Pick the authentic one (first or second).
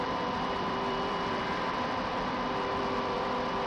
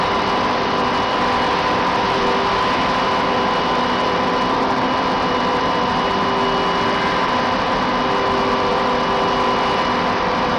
second